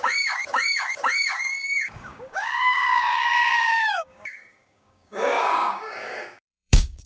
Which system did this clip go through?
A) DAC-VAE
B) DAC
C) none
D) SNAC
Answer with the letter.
B